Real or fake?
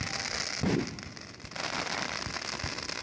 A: real